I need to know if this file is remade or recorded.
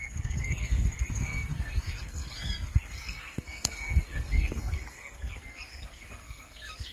remade